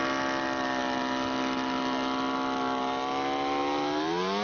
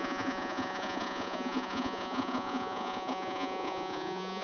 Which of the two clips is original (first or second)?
first